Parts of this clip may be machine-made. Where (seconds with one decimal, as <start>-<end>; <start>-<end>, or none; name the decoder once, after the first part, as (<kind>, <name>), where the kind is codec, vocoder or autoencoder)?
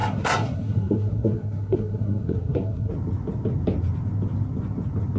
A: 0.0-2.9 (codec, SNAC)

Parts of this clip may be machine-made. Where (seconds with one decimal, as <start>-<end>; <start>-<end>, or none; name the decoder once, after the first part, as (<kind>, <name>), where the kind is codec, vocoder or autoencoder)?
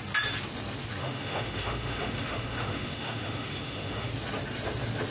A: 1.0-4.1 (autoencoder, DAC-VAE)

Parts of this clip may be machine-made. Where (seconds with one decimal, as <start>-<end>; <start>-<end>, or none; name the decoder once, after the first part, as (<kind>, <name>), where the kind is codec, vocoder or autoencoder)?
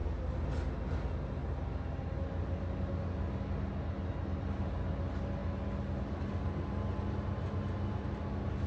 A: none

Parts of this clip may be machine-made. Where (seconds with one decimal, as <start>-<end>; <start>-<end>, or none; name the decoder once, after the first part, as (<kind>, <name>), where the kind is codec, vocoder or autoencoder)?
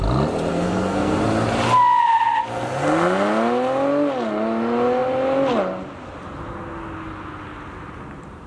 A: 0.5-1.2 (codec, SNAC)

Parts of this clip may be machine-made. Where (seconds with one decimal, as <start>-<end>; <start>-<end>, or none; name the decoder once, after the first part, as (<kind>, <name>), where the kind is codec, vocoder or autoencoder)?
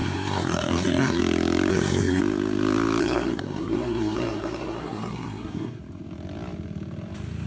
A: 0.0-1.2 (codec, SNAC); 1.7-2.2; 3.0-5.8